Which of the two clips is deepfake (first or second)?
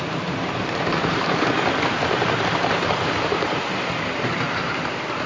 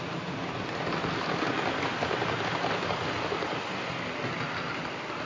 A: first